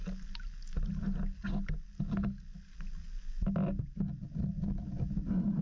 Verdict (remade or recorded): recorded